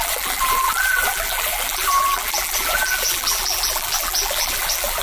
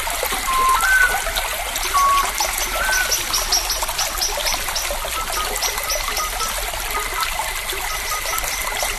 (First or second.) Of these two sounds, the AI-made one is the first